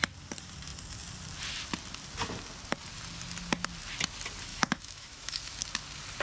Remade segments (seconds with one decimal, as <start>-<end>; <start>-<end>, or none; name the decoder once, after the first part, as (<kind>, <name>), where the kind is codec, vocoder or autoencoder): 4.5-5.4 (autoencoder, DAC-VAE)